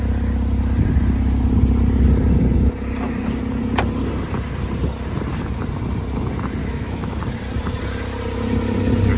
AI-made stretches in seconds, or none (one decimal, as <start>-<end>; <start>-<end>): 6.6-7.2